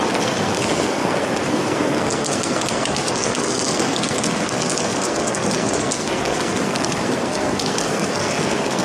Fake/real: fake